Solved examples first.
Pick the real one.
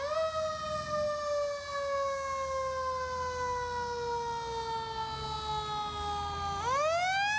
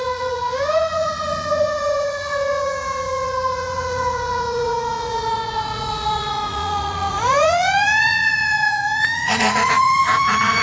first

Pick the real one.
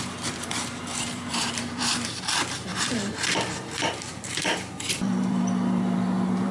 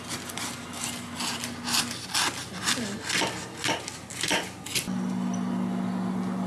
second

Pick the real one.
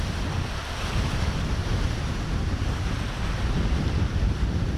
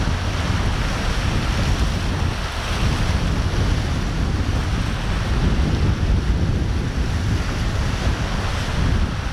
second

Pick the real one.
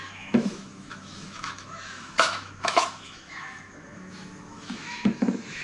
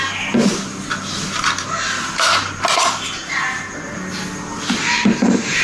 second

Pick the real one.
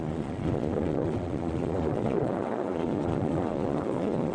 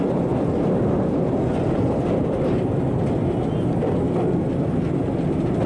second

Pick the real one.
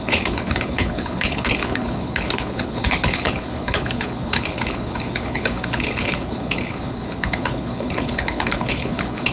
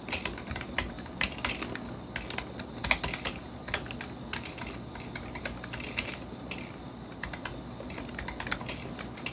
second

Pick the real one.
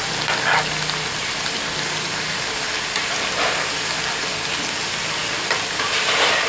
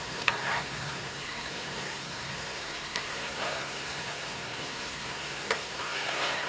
first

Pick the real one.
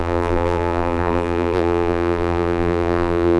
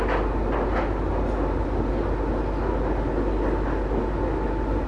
second